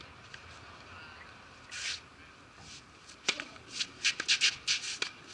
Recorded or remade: recorded